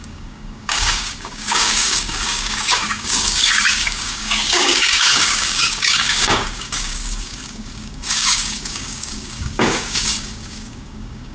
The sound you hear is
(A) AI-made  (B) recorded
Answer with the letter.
A